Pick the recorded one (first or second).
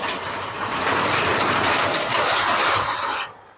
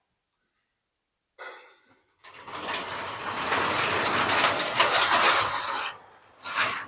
second